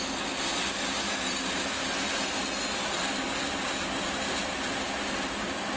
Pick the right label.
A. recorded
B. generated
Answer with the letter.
A